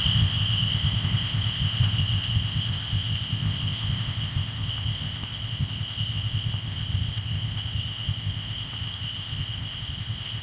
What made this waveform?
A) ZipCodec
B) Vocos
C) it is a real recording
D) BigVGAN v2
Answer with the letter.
A